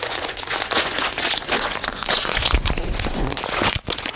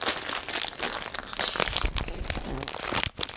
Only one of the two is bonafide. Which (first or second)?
second